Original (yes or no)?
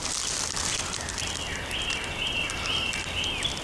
yes